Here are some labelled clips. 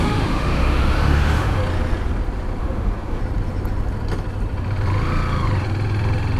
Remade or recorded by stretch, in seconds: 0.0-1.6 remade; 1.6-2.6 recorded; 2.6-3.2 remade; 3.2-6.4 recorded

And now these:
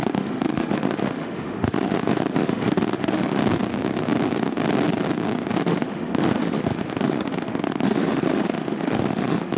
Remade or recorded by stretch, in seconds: 0.0-3.4 remade; 3.4-5.5 recorded; 5.5-9.6 remade

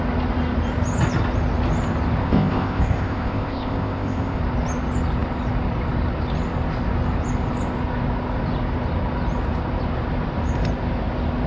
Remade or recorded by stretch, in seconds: 0.0-2.2 recorded; 2.2-4.4 remade; 4.4-11.5 recorded

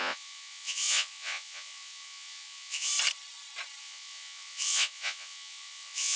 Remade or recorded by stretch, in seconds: 0.0-2.9 remade; 2.9-3.8 recorded; 3.8-6.2 remade

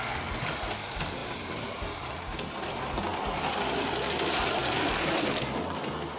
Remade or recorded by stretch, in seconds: 0.0-1.2 recorded; 1.2-2.1 remade; 2.1-6.2 recorded

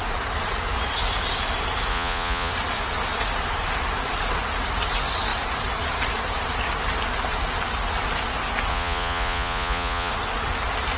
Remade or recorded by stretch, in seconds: 0.0-1.9 recorded; 1.9-2.5 remade; 2.5-8.7 recorded; 8.7-10.1 remade; 10.1-11.0 recorded

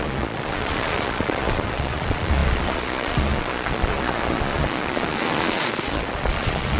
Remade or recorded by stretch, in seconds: 0.0-6.8 remade

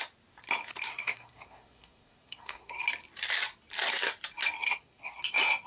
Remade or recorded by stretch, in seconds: 0.0-0.9 recorded; 0.9-2.8 remade; 2.8-4.6 recorded; 4.6-5.2 remade; 5.2-5.7 recorded